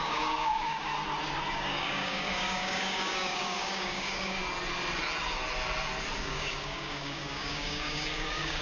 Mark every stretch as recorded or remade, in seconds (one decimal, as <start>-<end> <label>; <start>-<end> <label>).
0.0-0.9 remade; 0.9-1.5 recorded; 1.5-4.4 remade; 4.4-6.2 recorded; 6.2-8.6 remade